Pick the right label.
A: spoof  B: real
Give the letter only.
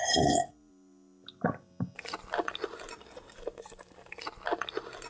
B